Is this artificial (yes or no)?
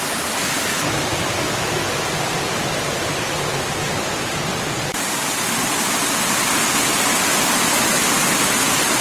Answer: no